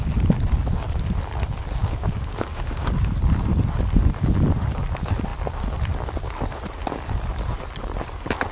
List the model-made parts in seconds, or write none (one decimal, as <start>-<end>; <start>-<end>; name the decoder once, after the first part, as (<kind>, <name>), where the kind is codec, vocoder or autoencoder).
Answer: 1.8-3.1 (codec, DAC)